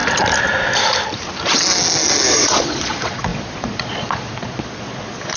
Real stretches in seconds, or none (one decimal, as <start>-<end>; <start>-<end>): 0.0-2.3